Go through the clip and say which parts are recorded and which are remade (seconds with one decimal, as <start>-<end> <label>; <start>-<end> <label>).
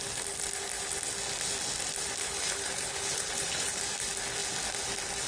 0.0-2.2 recorded; 2.2-3.8 remade; 3.8-5.3 recorded